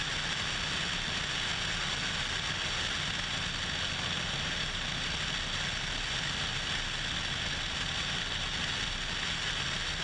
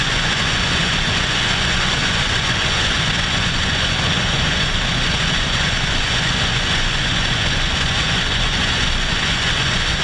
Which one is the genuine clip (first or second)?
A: first